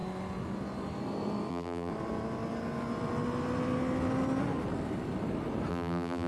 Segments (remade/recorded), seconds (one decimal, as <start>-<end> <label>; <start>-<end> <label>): 0.0-1.5 recorded; 1.5-1.9 remade; 1.9-5.7 recorded; 5.7-6.3 remade